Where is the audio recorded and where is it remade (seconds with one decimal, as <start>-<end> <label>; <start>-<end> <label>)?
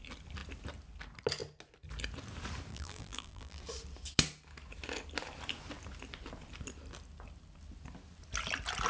0.0-2.7 recorded; 2.7-3.6 remade; 3.6-8.9 recorded